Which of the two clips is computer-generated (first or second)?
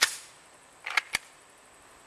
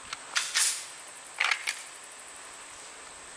first